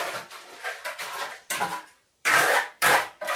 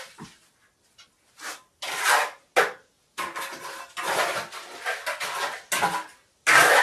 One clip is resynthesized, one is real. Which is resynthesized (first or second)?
first